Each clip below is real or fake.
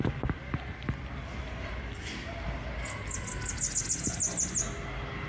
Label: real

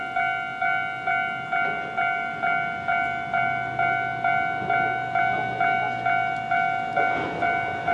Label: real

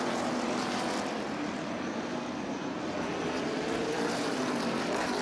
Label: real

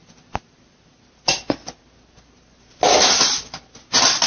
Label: real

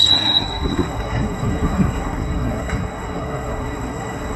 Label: fake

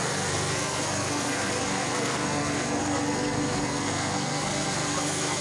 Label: fake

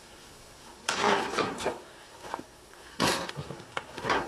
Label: fake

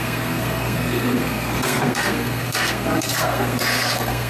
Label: fake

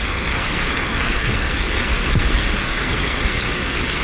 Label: fake